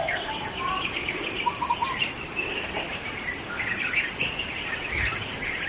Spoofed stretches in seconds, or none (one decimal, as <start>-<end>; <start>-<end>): none